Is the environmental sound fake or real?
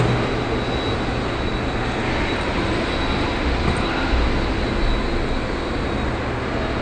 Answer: real